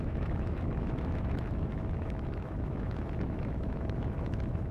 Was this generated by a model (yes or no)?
yes